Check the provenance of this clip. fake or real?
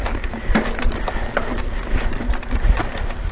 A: real